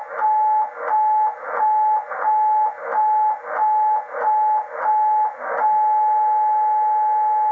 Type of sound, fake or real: real